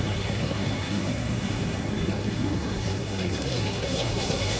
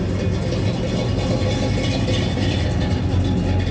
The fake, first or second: first